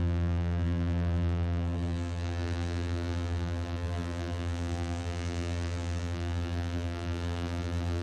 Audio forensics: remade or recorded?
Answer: remade